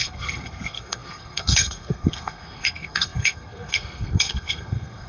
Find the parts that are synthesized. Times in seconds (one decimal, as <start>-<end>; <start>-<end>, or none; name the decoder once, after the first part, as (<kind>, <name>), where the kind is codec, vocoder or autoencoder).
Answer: 0.0-5.1 (codec, SNAC)